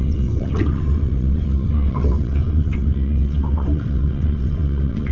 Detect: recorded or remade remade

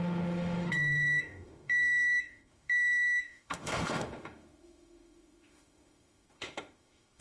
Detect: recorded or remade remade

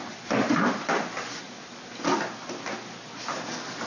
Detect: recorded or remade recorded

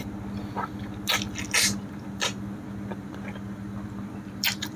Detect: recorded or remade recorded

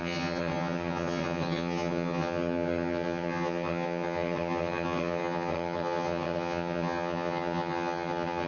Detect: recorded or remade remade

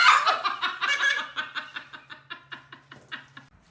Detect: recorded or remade recorded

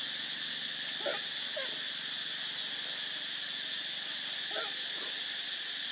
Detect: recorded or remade recorded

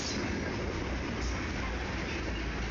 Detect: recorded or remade recorded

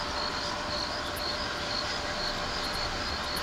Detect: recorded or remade recorded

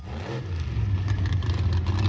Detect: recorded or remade recorded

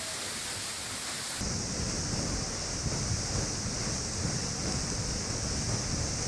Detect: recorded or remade recorded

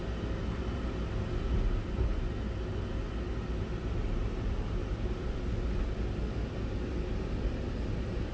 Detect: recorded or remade recorded